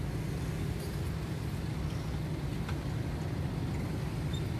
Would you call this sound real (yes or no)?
yes